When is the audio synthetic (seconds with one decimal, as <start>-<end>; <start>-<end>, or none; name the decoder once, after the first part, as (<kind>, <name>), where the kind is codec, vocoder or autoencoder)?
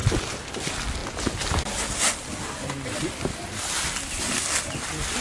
none